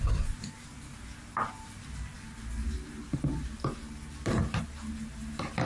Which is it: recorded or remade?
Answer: recorded